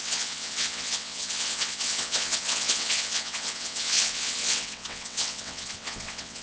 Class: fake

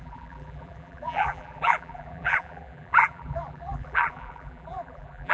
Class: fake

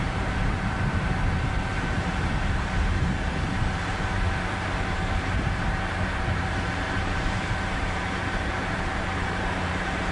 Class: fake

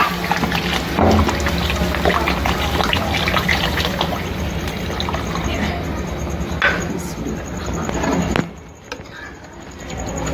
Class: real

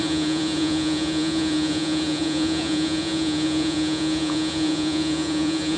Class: fake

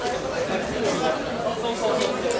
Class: real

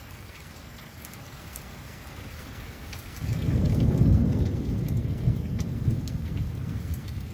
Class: fake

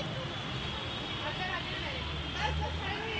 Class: real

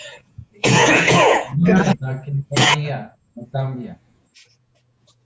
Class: fake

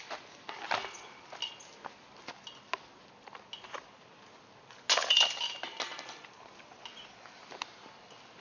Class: real